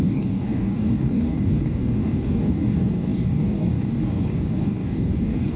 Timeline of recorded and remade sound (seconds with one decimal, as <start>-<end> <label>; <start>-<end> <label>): 0.0-5.6 remade